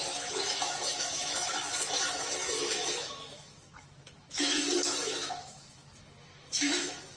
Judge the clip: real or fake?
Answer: fake